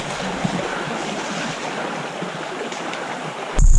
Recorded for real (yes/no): no